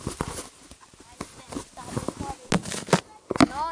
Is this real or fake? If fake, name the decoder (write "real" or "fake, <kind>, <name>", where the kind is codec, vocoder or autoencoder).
real